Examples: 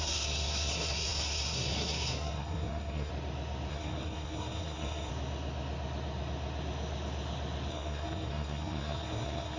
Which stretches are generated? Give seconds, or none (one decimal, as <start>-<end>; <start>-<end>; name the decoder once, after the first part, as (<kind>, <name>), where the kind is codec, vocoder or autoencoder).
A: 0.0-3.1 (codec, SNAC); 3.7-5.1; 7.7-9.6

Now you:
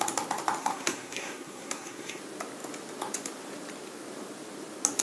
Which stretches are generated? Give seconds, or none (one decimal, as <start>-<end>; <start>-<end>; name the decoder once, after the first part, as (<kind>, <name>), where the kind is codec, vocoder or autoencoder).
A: 0.6-2.2 (codec, SNAC)

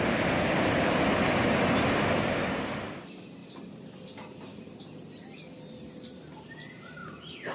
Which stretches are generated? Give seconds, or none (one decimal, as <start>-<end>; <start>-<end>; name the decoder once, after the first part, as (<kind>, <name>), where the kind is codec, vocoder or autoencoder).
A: none

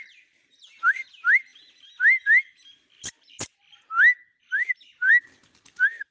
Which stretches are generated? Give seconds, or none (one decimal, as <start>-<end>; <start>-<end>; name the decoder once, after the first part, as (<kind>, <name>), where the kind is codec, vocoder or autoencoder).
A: none

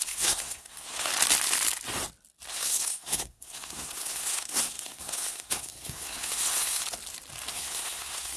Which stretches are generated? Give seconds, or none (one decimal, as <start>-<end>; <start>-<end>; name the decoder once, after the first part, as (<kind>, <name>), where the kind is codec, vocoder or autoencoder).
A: 0.0-1.1 (codec, SNAC); 2.5-6.8; 7.5-8.4